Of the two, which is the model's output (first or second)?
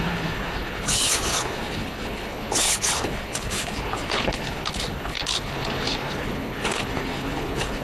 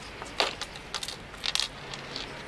first